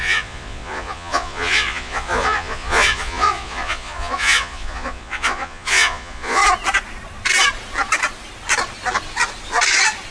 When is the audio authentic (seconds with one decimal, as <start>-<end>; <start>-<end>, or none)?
6.4-10.1